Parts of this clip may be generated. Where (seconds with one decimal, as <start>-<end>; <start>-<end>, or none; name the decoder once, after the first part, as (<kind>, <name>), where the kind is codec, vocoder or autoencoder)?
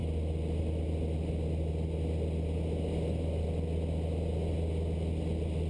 none